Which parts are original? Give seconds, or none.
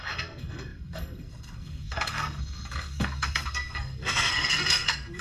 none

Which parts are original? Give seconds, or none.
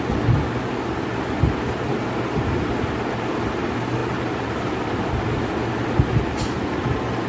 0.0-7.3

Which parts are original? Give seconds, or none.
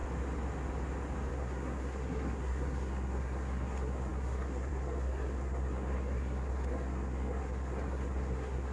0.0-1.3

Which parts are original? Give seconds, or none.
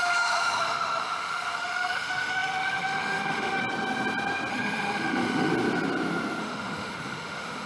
3.6-4.5; 5.5-6.4